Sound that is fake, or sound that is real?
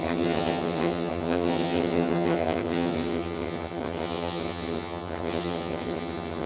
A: fake